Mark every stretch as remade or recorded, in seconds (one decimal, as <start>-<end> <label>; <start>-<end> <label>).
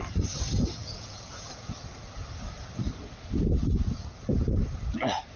0.0-0.8 recorded; 0.8-1.7 remade; 1.7-5.4 recorded